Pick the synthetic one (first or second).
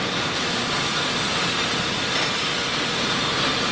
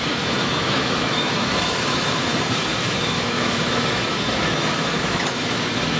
second